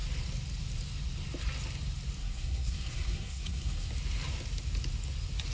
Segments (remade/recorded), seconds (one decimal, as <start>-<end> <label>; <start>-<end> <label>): 0.0-2.2 recorded; 2.2-3.9 remade; 3.9-5.5 recorded